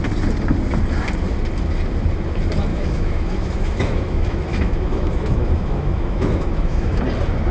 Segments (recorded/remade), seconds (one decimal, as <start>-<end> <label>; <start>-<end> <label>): 0.0-2.7 recorded; 2.7-7.0 remade; 7.0-7.5 recorded